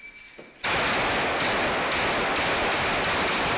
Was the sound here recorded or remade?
recorded